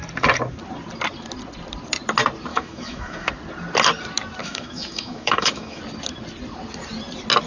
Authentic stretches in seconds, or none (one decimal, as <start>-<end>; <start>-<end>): 0.0-2.5; 3.3-4.4; 5.8-7.5